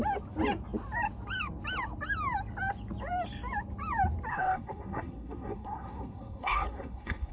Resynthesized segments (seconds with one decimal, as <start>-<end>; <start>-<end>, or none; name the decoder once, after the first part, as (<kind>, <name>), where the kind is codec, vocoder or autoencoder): 4.3-7.3 (codec, SNAC)